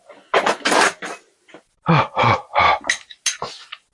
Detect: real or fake real